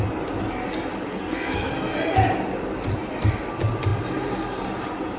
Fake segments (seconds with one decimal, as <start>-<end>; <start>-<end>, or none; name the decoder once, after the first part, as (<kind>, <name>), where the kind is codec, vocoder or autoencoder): 1.1-1.7 (codec, SNAC)